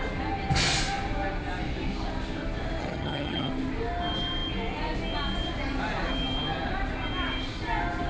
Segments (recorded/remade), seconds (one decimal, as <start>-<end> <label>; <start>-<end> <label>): 0.0-2.8 recorded; 2.8-3.5 remade; 3.5-8.1 recorded